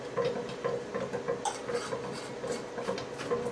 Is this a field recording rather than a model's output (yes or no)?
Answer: yes